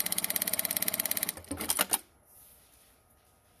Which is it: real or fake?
real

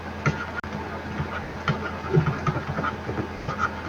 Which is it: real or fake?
real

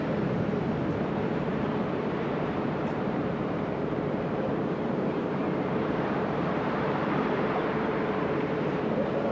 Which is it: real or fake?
fake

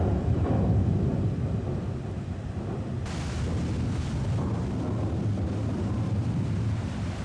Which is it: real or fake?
real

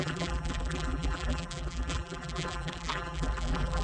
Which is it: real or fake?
fake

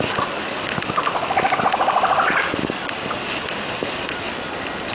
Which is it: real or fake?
fake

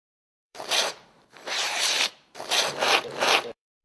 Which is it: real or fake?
fake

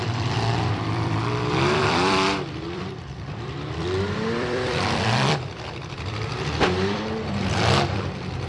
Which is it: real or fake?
fake